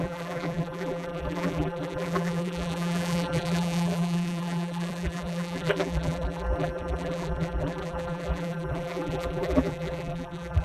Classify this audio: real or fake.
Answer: fake